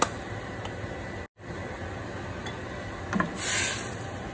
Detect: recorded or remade recorded